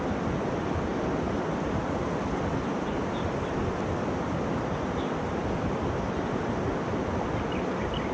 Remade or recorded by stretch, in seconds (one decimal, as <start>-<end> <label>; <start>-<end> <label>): 0.0-8.1 recorded